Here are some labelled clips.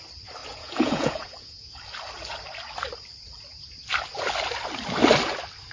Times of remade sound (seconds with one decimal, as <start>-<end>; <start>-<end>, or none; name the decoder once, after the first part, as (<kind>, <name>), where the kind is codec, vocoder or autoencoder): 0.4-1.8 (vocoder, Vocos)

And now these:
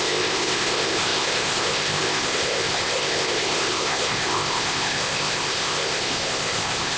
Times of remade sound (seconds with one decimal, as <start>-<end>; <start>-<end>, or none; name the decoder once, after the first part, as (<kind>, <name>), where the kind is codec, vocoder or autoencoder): 0.0-7.0 (codec, ZipCodec)

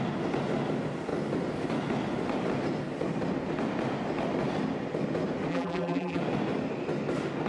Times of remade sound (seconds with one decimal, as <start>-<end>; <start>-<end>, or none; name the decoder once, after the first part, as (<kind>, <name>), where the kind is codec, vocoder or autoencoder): 5.5-6.2 (vocoder, BigVGAN v2)

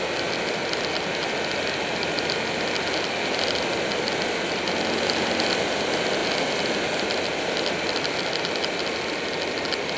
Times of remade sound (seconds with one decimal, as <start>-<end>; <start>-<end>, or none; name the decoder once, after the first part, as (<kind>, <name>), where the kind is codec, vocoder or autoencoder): none

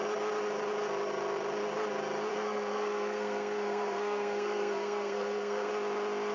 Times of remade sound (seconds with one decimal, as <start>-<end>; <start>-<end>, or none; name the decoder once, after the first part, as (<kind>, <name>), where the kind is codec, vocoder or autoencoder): 2.3-5.7 (codec, SNAC)

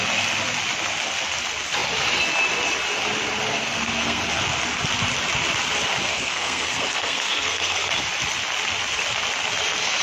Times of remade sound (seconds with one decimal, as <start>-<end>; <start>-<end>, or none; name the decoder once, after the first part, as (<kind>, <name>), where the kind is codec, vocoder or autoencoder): 3.5-4.2 (codec, SNAC); 6.1-7.9

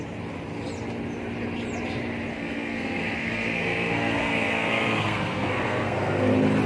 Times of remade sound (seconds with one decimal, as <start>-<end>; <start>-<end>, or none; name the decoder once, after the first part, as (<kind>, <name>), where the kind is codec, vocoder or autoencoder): 2.3-6.3 (codec, SNAC)